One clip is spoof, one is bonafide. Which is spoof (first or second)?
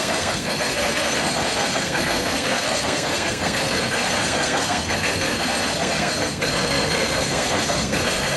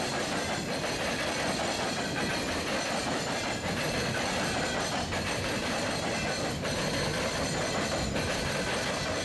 first